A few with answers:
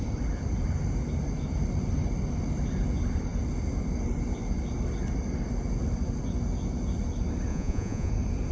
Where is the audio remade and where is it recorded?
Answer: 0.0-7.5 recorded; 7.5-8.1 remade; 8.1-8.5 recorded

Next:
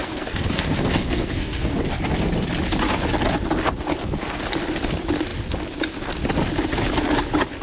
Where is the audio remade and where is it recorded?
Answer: 0.0-1.8 remade; 1.8-7.6 recorded

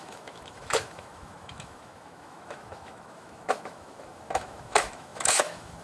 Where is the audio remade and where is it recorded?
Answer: 0.0-5.8 remade

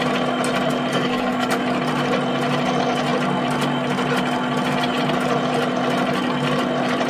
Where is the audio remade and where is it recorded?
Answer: 0.0-0.9 recorded; 0.9-1.5 remade; 1.5-7.1 recorded

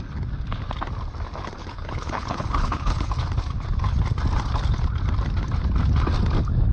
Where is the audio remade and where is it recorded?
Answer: 0.0-1.6 recorded; 1.6-3.1 remade; 3.1-6.7 recorded

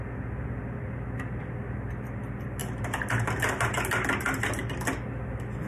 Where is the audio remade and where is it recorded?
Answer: 0.0-5.7 recorded

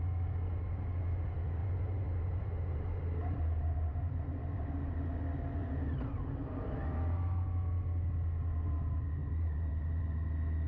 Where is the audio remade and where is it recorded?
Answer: 0.0-1.6 recorded; 1.6-4.7 remade; 4.7-5.6 recorded; 5.6-6.8 remade; 6.8-9.2 recorded; 9.2-10.0 remade; 10.0-10.7 recorded